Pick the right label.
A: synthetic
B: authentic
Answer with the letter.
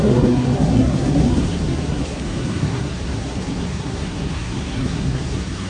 A